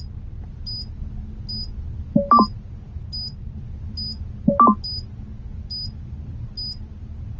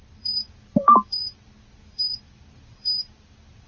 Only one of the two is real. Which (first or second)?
first